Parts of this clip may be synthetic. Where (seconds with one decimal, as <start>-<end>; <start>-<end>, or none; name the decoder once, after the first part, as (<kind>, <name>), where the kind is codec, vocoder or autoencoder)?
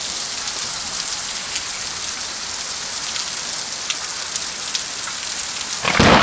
none